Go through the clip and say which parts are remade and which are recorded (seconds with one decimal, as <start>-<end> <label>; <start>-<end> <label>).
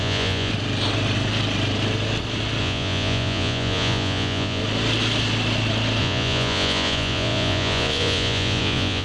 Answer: 0.0-0.5 remade; 0.5-2.6 recorded; 2.6-4.6 remade; 4.6-6.0 recorded; 6.0-9.0 remade